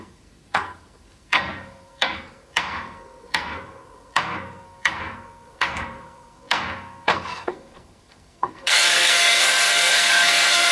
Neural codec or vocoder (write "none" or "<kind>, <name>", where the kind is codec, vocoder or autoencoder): codec, SNAC